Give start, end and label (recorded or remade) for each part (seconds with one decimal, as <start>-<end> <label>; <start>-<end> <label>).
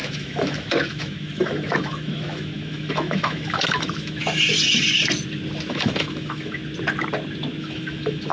0.0-4.2 remade; 4.2-5.7 recorded; 5.7-6.6 remade; 6.6-7.6 recorded; 7.6-8.3 remade